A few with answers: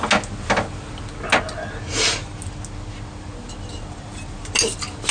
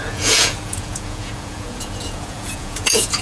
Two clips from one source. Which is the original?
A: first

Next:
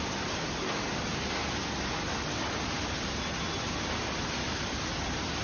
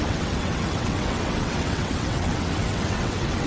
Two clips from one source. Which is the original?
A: first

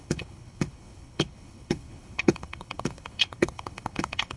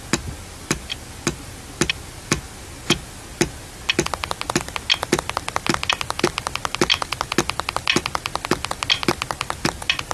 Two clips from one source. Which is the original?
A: second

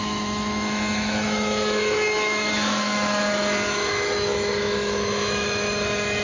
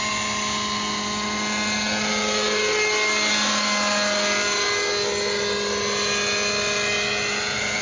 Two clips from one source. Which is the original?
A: second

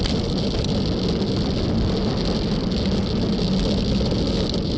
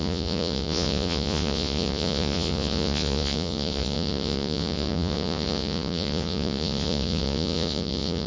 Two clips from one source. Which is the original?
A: first